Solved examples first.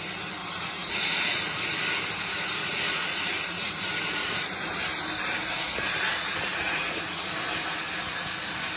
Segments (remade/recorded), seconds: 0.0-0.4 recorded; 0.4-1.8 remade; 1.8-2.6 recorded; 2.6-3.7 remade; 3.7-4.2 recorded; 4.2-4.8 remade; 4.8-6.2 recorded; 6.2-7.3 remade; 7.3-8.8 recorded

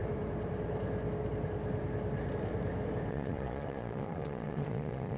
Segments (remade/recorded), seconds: 0.0-3.1 recorded; 3.1-5.2 remade